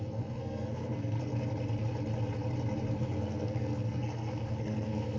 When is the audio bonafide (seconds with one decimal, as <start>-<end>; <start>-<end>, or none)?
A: 1.3-2.9